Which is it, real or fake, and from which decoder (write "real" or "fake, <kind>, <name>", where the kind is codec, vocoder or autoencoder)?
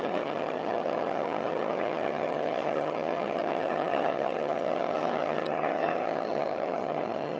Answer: fake, vocoder, HiFi-GAN